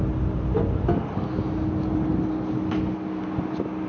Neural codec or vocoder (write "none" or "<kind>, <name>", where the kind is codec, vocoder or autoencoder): none